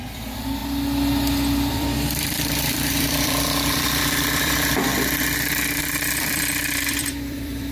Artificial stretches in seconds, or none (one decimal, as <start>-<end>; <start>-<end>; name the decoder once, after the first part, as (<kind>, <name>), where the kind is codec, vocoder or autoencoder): 0.0-0.6 (vocoder, BigVGAN v2); 1.7-4.9; 5.8-7.7